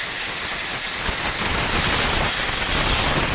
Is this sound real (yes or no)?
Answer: yes